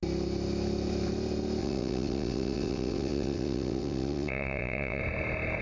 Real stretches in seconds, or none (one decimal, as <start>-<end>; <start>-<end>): 0.0-1.6; 5.0-5.6